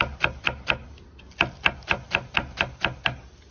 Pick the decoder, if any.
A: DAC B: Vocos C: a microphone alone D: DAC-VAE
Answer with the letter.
C